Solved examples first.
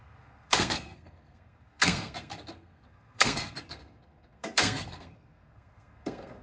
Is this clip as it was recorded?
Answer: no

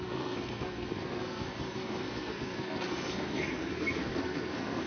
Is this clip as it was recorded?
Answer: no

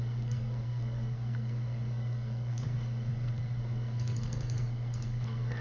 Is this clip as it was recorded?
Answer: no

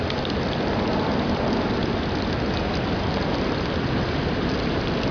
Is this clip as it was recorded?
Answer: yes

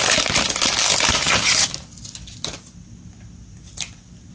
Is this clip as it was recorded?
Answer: yes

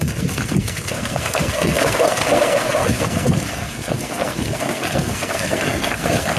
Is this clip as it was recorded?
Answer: no